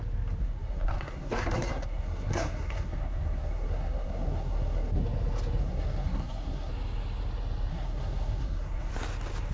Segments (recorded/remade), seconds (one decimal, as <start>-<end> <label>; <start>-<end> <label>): 0.0-0.4 recorded; 0.4-5.0 remade; 5.0-5.6 recorded; 5.6-6.7 remade; 6.7-7.7 recorded; 7.7-8.9 remade; 8.9-9.5 recorded